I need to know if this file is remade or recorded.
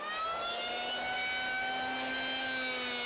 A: recorded